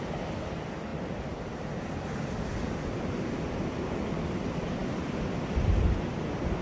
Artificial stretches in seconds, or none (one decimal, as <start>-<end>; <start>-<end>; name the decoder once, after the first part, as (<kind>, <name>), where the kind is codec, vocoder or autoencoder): none